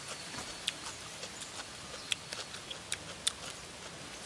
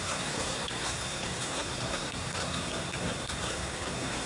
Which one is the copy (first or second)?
second